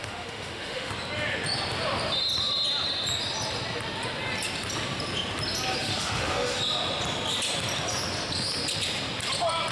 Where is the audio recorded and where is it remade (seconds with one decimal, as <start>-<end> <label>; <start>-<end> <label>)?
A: 0.0-0.9 remade; 0.9-5.8 recorded; 5.8-6.6 remade; 6.6-9.7 recorded